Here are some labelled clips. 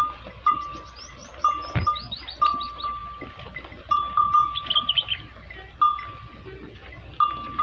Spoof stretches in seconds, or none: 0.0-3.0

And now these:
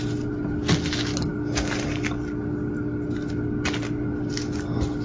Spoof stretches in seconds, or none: none